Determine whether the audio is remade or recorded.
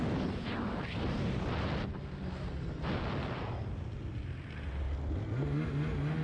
recorded